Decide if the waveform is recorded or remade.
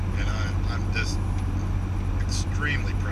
recorded